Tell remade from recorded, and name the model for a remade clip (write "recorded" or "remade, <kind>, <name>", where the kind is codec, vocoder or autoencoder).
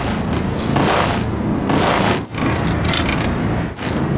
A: recorded